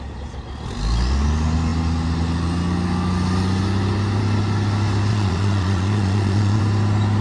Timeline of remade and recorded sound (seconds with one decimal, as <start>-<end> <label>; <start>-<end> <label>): 0.0-5.1 recorded; 5.1-6.6 remade; 6.6-7.2 recorded